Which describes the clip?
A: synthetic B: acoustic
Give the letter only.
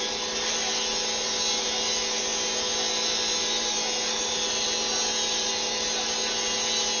B